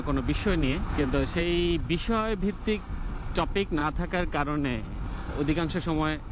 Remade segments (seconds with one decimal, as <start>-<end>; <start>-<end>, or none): 0.4-1.4